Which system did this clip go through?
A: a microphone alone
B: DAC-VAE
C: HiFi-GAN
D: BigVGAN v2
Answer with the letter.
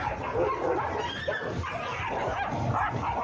A